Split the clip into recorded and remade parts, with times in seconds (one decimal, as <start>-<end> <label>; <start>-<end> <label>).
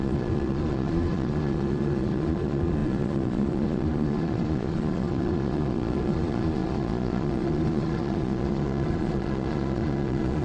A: 0.0-10.4 remade